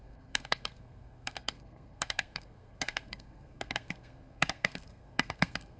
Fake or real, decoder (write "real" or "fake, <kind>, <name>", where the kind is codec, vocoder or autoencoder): fake, codec, SNAC